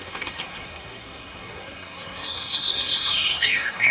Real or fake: fake